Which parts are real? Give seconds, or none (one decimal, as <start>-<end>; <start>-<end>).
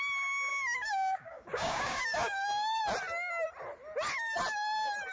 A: 0.0-0.5; 2.8-5.1